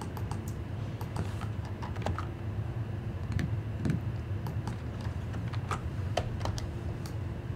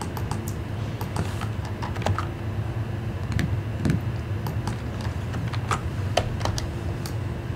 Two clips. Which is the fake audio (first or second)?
first